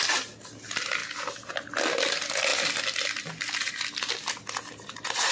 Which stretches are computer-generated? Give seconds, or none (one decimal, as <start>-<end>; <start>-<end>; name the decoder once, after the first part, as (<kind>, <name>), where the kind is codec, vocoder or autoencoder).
none

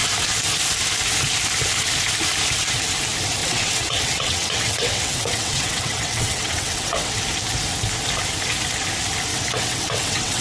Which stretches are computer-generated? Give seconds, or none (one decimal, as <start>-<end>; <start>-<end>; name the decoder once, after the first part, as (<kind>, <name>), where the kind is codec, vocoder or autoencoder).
3.4-7.2 (vocoder, WaveNeXt); 9.3-10.4